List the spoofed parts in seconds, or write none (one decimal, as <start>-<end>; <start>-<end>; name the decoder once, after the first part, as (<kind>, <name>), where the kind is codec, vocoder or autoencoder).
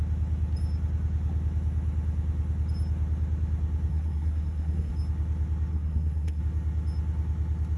3.9-4.9 (codec, SNAC); 5.7-6.4